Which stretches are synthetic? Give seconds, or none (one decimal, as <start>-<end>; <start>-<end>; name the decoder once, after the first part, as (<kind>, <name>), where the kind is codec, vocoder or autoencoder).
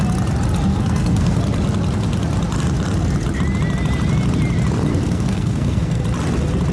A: 0.7-1.4 (codec, SNAC); 4.9-6.0